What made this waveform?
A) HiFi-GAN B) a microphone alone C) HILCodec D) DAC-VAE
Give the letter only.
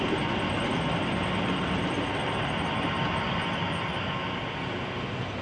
B